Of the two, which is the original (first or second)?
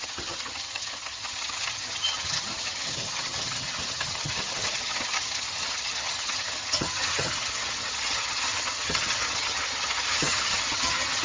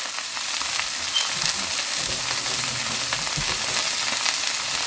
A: second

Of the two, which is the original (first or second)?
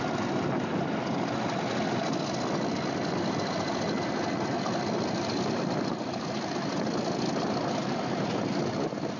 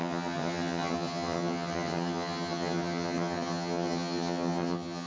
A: first